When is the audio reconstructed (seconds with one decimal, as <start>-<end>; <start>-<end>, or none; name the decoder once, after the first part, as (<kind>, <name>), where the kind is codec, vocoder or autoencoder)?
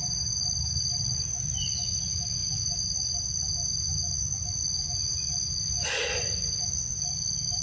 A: none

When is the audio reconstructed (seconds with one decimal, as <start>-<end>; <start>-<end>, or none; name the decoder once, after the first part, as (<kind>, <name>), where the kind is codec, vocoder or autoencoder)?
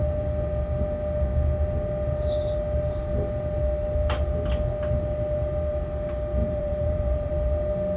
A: 6.4-7.3 (vocoder, BigVGAN v2)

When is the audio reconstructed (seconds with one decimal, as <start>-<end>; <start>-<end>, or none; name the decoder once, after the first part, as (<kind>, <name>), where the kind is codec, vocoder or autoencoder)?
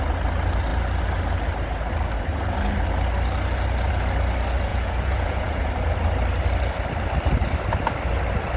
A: 4.7-5.7 (vocoder, Vocos)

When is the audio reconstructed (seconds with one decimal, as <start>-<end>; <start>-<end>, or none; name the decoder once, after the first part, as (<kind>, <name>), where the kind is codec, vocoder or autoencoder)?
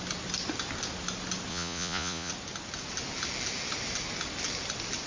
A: 1.5-2.3 (vocoder, Vocos)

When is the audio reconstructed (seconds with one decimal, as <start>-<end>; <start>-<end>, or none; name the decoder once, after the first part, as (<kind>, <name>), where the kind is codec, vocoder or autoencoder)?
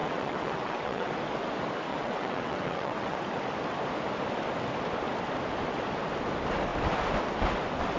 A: 0.0-1.1 (vocoder, WaveNeXt); 1.9-3.2